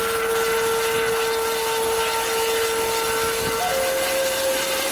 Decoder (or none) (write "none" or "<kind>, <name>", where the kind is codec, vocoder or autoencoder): none